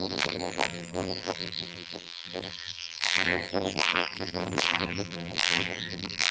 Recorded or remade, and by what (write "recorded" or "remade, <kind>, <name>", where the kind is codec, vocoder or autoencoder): remade, vocoder, BigVGAN v2